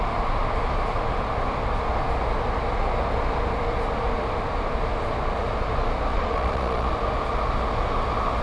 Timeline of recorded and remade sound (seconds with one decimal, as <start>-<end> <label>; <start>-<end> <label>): 0.0-6.1 recorded; 6.1-6.9 remade; 6.9-8.4 recorded